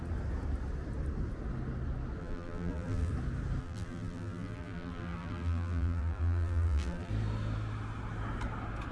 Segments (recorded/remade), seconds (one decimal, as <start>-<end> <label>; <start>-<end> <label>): 0.0-2.2 recorded; 2.2-3.1 remade; 3.1-3.6 recorded; 3.6-7.1 remade; 7.1-8.9 recorded

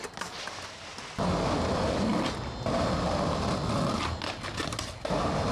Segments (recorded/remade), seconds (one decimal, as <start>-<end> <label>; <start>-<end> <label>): 0.0-5.5 recorded

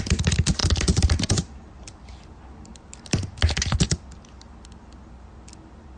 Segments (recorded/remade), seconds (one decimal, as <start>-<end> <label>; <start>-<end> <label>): 0.0-0.6 recorded; 0.6-2.0 remade; 2.0-6.0 recorded

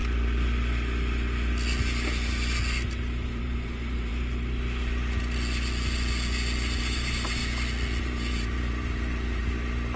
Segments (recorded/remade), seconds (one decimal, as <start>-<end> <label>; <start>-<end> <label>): 0.0-3.3 recorded; 3.3-4.1 remade; 4.1-6.8 recorded; 6.8-7.4 remade; 7.4-8.0 recorded; 8.0-10.0 remade

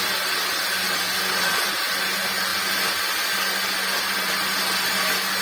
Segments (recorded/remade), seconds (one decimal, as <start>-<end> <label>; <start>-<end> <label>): 0.0-5.4 recorded

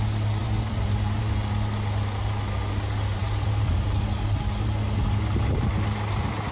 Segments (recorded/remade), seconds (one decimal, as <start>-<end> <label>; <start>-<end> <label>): 0.0-0.4 recorded; 0.4-1.2 remade; 1.2-3.2 recorded; 3.2-3.8 remade; 3.8-6.5 recorded